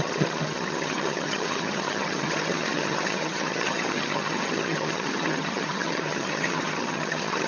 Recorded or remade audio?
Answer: remade